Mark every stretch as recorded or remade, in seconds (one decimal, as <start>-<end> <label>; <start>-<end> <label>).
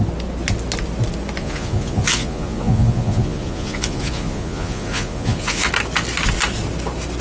0.0-1.4 recorded; 1.4-5.7 remade; 5.7-7.2 recorded